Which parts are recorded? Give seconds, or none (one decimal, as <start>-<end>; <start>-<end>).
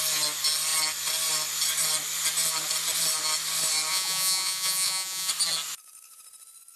0.0-3.9; 5.3-6.8